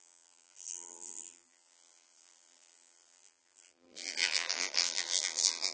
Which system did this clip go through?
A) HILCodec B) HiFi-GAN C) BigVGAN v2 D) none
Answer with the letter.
C